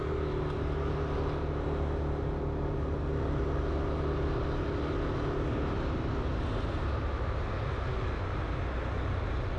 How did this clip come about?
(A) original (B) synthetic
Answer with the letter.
A